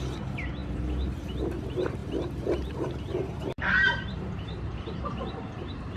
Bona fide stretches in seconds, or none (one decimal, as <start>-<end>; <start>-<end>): none